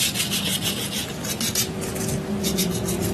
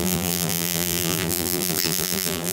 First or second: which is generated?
second